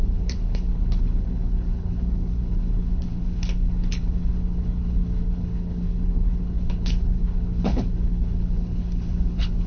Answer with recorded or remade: remade